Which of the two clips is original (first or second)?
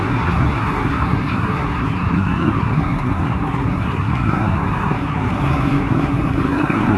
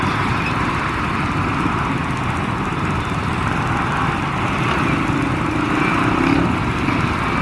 second